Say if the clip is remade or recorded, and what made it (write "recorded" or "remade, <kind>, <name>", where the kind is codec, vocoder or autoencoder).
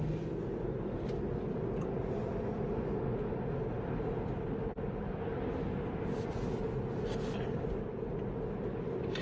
recorded